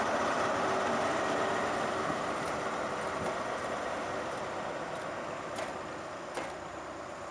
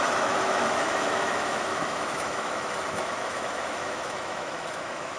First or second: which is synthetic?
second